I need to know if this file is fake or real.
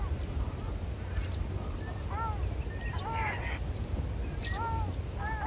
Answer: real